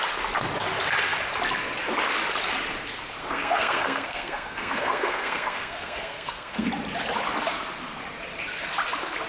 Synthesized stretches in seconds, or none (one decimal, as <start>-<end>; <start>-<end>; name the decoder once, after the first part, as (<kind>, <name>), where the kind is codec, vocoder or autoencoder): 3.2-6.7 (codec, SNAC)